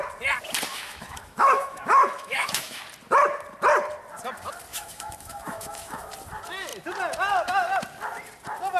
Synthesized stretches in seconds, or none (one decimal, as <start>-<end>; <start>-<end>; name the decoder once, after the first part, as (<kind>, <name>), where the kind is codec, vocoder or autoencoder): 0.7-2.8 (autoencoder, DAC-VAE); 4.7-6.1